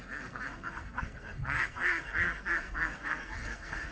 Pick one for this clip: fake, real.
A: fake